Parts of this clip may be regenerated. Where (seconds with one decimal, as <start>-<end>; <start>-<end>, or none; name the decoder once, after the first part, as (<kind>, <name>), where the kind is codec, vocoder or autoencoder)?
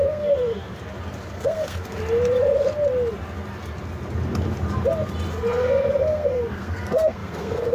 0.0-0.7 (codec, SNAC); 1.3-2.0; 5.3-7.7